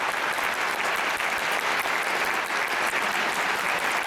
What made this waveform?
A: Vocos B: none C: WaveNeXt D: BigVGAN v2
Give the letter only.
B